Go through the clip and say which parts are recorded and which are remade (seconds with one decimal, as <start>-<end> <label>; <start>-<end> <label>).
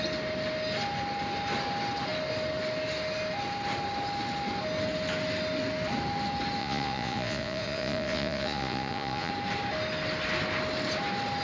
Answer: 0.0-6.6 recorded; 6.6-9.3 remade; 9.3-11.4 recorded